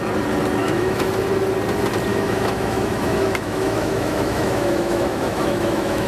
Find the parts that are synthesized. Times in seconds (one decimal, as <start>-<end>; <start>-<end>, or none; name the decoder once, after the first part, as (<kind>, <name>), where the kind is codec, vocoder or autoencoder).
0.6-1.1 (autoencoder, DAC-VAE); 2.1-6.1